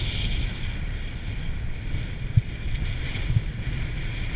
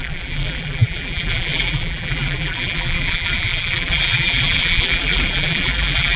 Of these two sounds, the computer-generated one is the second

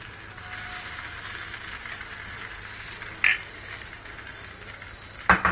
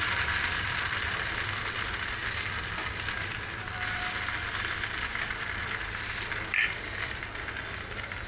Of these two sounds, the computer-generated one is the second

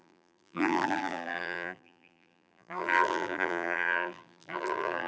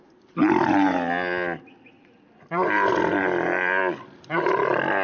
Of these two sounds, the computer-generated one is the first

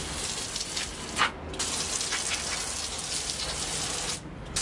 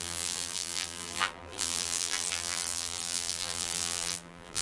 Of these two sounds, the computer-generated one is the second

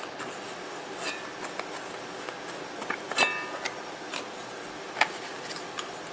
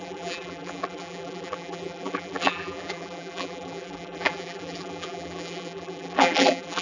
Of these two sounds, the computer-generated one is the second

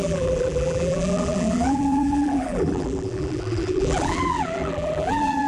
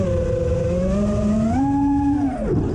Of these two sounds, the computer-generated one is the first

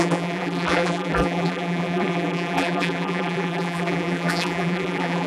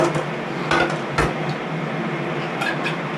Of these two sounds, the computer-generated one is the first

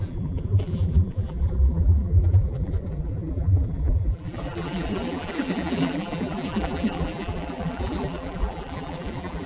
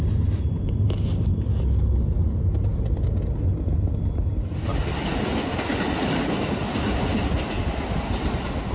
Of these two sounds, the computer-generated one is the first